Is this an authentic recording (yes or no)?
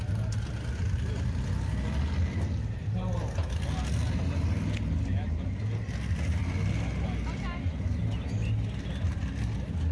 yes